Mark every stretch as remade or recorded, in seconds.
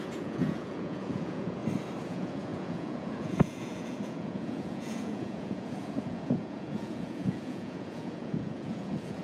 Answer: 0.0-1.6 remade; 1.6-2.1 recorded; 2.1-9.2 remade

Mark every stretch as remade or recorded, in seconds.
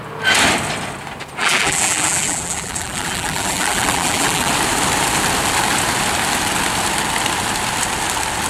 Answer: 0.0-1.4 recorded; 1.4-4.5 remade; 4.5-8.5 recorded